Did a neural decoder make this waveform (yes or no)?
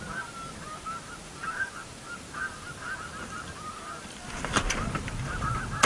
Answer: no